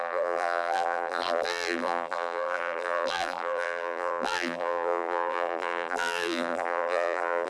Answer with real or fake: fake